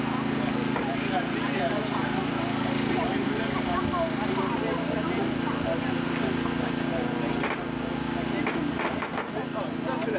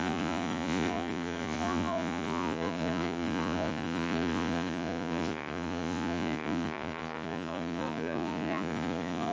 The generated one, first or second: second